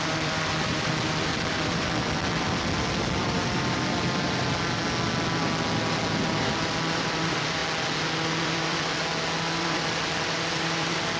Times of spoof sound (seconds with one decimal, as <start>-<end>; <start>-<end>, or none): 0.0-4.8; 6.2-7.6; 8.4-11.2